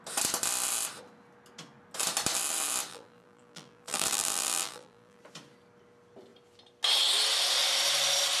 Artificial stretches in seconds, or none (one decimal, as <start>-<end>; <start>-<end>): 2.9-5.2